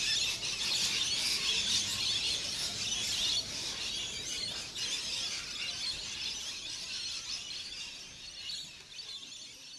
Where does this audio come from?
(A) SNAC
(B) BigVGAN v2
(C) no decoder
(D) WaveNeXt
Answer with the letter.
C